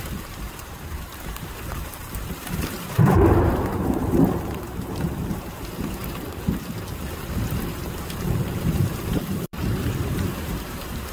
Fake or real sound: fake